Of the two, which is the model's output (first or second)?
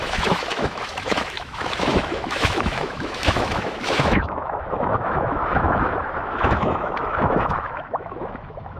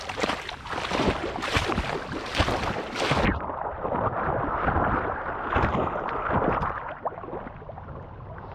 first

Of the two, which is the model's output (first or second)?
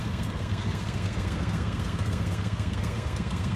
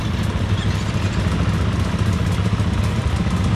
first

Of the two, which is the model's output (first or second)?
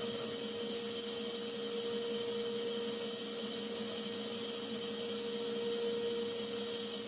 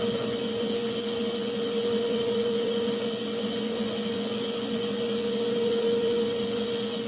second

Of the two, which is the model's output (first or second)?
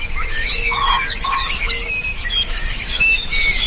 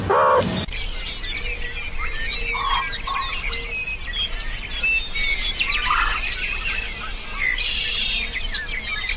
first